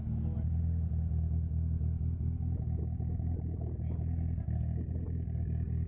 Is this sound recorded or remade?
recorded